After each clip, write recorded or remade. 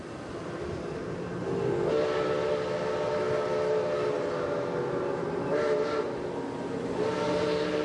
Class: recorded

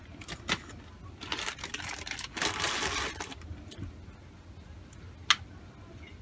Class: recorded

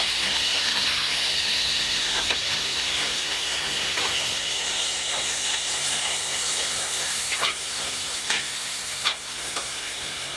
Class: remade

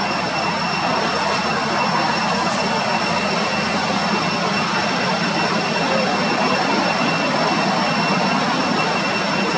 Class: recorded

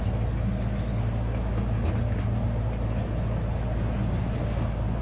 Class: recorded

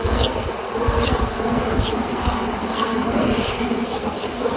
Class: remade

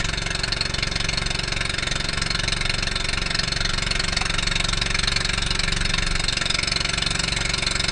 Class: recorded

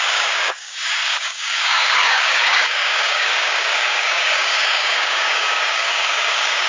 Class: remade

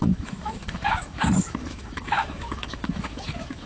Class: remade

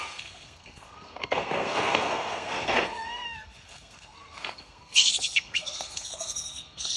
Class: remade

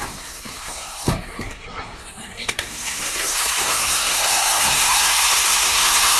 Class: remade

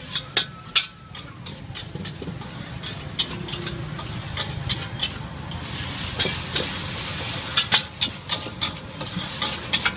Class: recorded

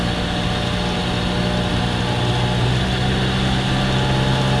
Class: recorded